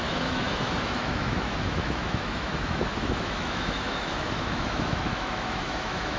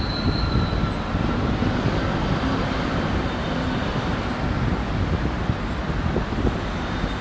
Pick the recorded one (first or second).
second